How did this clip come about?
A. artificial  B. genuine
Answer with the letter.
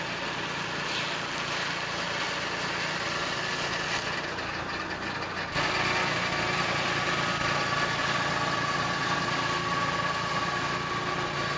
B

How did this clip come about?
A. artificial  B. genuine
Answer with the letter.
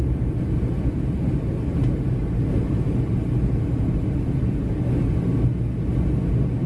B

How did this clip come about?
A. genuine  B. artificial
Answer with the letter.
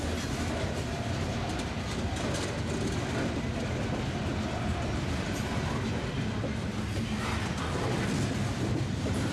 A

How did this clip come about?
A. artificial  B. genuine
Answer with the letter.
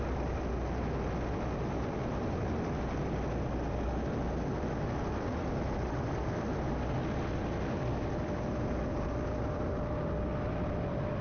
B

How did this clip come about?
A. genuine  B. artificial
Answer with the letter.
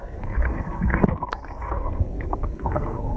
B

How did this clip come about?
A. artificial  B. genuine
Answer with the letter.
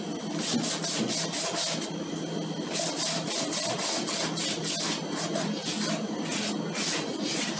B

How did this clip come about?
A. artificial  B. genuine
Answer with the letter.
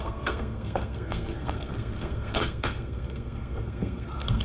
A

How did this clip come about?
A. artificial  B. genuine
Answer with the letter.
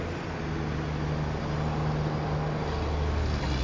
B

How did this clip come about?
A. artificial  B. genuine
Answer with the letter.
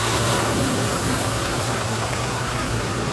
A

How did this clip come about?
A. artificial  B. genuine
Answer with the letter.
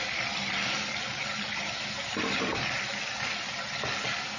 B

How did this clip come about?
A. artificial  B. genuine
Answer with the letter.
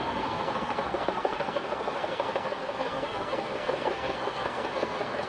A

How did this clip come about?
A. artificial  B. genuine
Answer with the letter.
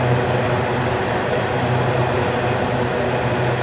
B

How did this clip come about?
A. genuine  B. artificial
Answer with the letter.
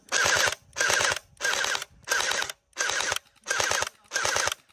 A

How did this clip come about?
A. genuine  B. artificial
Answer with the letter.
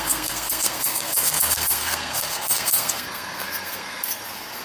B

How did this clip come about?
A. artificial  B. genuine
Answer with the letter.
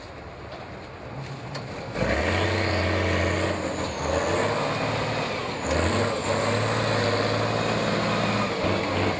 B